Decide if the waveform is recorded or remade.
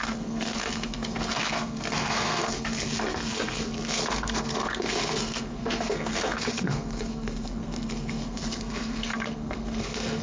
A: remade